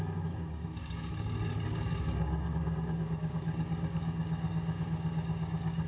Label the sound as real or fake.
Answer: fake